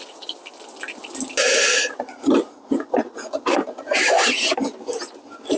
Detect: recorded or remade recorded